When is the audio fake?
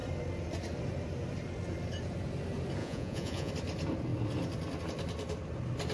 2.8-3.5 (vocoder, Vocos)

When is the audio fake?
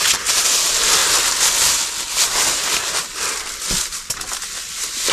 none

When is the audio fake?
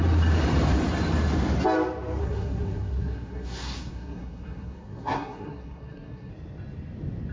2.2-6.3 (codec, SNAC)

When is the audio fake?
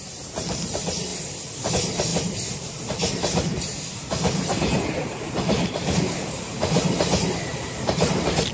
2.1-3.1 (vocoder, BigVGAN v2); 3.5-7.0; 7.5-8.1